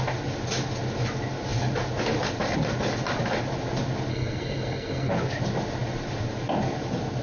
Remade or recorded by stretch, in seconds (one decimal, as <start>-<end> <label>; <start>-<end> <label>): 0.0-4.1 recorded; 4.1-5.1 remade; 5.1-7.2 recorded